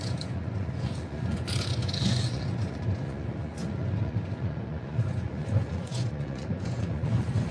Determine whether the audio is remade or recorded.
remade